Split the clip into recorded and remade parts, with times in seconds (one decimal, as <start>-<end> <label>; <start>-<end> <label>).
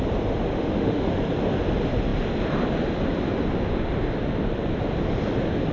0.0-0.5 recorded; 0.5-1.1 remade; 1.1-5.7 recorded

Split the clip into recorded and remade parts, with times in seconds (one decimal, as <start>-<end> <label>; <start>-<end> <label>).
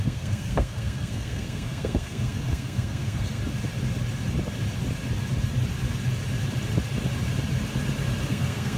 0.0-3.4 remade; 3.4-8.3 recorded; 8.3-8.8 remade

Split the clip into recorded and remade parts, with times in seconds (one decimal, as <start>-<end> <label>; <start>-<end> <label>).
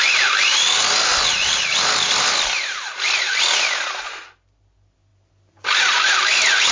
0.0-6.7 recorded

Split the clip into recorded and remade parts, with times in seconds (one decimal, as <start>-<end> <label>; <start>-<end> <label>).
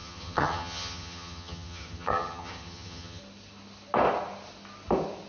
0.0-3.2 remade; 3.2-5.3 recorded